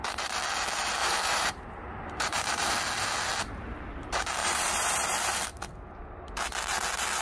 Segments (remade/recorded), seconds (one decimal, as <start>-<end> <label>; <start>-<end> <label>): 0.0-1.0 recorded; 1.0-2.8 remade; 2.8-4.4 recorded; 4.4-5.3 remade; 5.3-7.2 recorded